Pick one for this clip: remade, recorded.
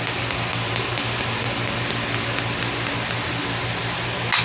recorded